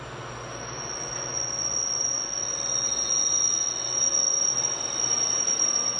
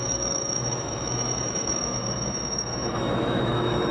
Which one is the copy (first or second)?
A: second